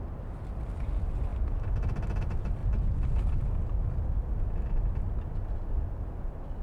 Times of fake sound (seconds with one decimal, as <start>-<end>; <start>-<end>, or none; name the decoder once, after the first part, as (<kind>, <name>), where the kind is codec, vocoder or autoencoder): none